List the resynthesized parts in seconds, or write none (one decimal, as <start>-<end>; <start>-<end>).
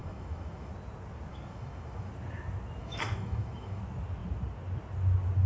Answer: 0.0-0.7; 1.3-2.1; 2.8-3.8